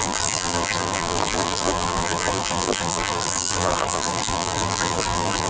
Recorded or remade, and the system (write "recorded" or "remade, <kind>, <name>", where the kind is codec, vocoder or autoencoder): remade, vocoder, BigVGAN v2